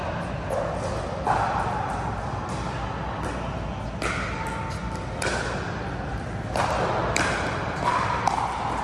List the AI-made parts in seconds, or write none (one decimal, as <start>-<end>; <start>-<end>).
none